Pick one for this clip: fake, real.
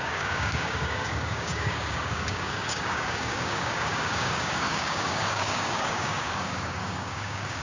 fake